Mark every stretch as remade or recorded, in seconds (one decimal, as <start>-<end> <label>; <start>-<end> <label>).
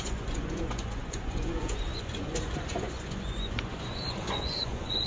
0.0-5.1 remade